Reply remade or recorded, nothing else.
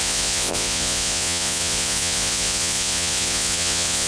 remade